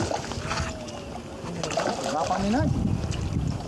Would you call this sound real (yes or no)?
yes